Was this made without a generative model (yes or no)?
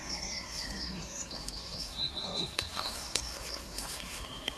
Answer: no